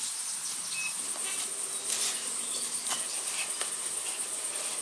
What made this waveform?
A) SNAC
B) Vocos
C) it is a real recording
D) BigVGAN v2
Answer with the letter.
C